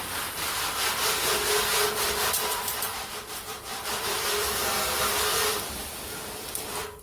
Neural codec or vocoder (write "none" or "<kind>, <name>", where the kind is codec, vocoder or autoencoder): vocoder, BigVGAN v2